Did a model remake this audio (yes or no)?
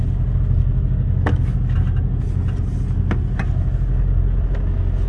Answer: no